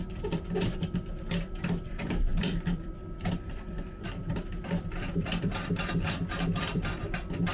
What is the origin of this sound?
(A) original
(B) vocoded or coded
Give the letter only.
B